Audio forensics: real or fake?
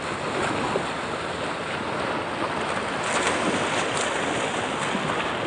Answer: real